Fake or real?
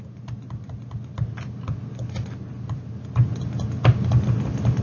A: real